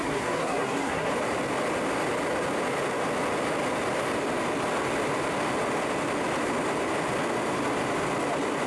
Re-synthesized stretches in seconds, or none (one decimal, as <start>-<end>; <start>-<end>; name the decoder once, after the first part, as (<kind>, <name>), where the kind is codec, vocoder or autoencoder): 0.0-1.1 (codec, SNAC)